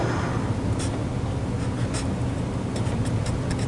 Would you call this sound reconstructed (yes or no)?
no